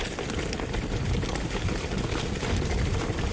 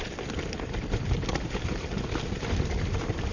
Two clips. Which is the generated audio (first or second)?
second